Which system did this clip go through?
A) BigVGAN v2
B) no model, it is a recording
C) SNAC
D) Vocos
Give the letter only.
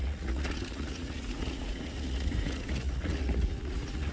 D